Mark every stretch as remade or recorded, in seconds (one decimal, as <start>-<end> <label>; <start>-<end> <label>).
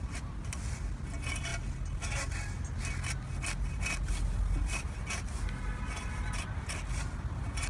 0.0-7.7 recorded